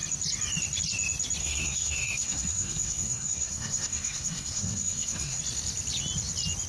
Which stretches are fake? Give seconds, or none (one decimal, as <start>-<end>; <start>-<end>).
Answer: 1.4-5.4